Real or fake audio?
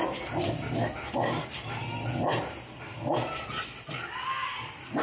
real